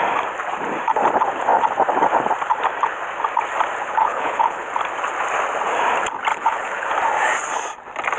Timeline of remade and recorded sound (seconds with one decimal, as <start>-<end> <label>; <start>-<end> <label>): 0.0-4.0 recorded; 4.0-4.7 remade; 4.7-6.3 recorded; 6.3-6.9 remade; 6.9-8.2 recorded